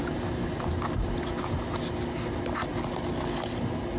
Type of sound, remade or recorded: recorded